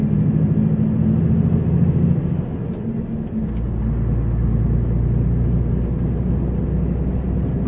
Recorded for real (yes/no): yes